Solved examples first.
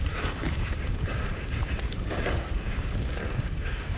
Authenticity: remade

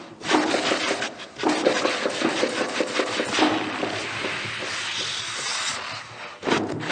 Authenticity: recorded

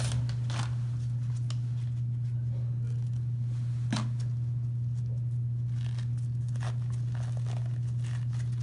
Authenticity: recorded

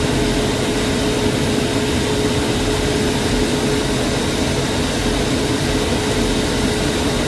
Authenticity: recorded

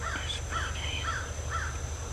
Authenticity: recorded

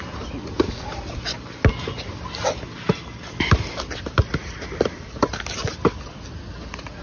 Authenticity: recorded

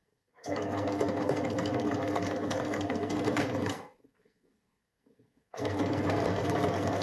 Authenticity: remade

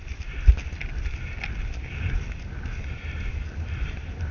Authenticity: recorded